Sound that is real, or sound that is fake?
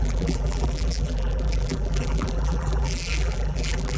fake